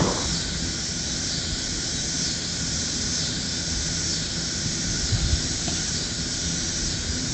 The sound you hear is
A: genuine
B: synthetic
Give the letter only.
A